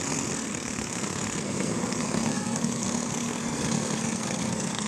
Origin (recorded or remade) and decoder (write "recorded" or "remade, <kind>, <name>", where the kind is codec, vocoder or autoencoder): remade, codec, SNAC